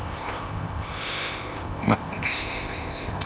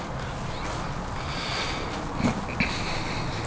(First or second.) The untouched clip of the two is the second